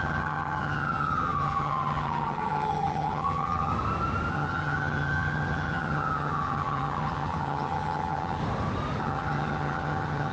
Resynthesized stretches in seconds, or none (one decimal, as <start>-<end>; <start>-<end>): 0.0-3.7; 4.3-8.4; 9.0-10.3